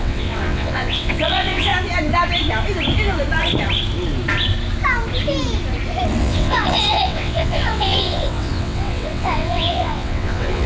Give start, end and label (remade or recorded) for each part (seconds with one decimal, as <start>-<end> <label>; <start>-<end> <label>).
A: 0.0-1.7 remade; 1.7-6.2 recorded; 6.2-10.7 remade